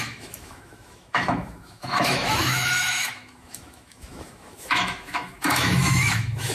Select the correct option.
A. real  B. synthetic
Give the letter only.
B